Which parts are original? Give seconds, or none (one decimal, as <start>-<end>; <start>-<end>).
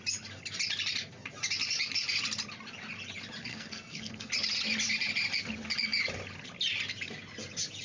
0.0-3.5; 4.3-7.8